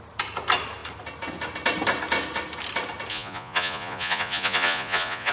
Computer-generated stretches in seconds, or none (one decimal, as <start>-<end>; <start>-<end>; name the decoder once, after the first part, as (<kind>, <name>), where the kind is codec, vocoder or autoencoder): 3.1-5.3 (vocoder, Vocos)